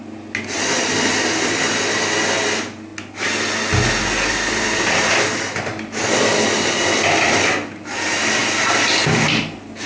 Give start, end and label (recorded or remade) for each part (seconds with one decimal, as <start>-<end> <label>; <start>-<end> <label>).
0.0-9.9 recorded